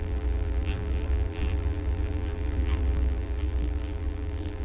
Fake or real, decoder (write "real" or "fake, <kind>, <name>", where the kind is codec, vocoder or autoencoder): fake, vocoder, BigVGAN v2